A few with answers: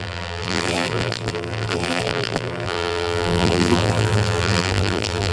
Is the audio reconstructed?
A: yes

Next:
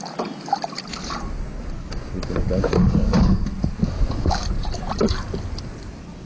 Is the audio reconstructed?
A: no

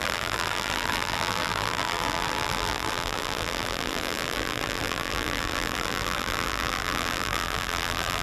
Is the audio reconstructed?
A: yes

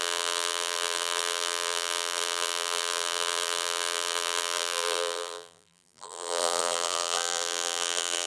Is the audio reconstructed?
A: yes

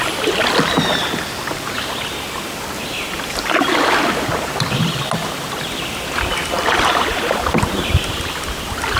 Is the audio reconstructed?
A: no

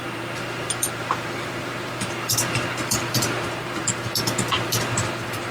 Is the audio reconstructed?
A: yes